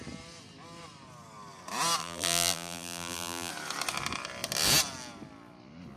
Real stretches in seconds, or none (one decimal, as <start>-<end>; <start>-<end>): 0.0-2.0; 3.5-6.0